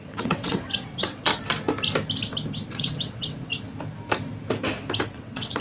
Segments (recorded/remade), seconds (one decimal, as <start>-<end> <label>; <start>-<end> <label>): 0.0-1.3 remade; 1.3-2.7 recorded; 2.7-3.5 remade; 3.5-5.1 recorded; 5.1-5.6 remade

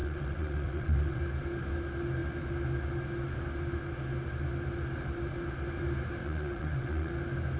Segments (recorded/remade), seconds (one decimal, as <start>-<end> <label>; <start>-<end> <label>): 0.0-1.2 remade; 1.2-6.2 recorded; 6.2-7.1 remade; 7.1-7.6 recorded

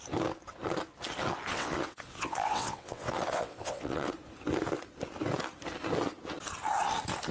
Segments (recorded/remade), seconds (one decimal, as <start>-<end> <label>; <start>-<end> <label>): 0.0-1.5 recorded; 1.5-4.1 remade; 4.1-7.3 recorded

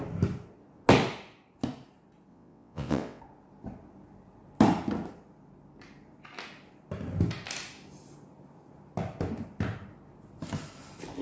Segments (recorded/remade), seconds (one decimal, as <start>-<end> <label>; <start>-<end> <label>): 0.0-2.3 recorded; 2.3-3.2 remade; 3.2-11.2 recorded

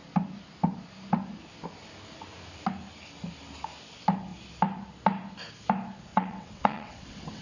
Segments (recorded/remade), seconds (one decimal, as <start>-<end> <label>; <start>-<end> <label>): 0.0-6.1 recorded; 6.1-7.4 remade

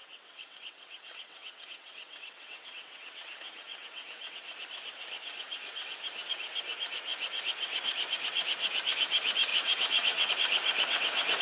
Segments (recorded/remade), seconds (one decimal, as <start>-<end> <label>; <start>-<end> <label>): 0.0-4.4 remade; 4.4-9.5 recorded; 9.5-10.3 remade; 10.3-11.4 recorded